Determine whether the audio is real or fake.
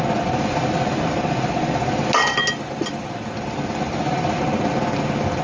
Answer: real